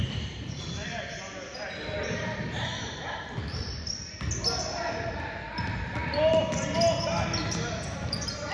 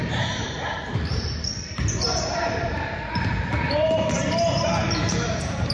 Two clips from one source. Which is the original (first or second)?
first